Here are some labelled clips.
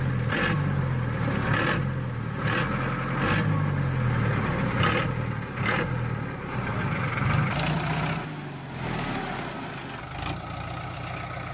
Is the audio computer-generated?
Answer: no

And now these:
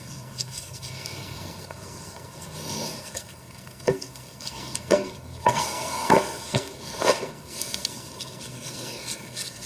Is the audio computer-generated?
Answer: yes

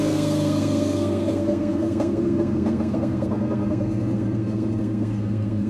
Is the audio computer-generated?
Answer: yes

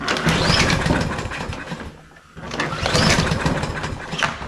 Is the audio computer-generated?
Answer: no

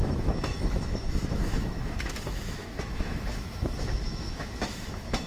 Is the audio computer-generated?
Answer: yes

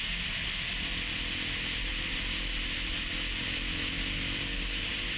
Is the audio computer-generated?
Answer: no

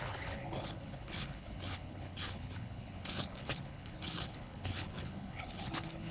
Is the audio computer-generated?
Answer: yes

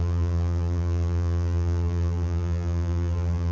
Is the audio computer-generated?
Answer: yes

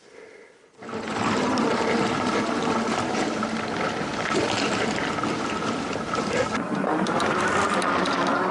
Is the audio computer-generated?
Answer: no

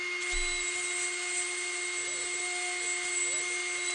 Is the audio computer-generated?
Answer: no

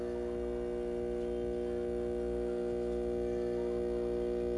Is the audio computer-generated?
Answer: no